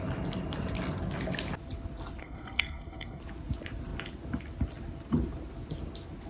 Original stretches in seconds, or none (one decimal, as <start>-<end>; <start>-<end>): 0.0-2.2; 3.2-6.3